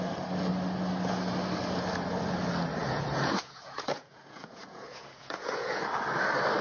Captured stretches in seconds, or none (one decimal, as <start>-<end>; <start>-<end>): 0.0-2.8; 5.8-6.6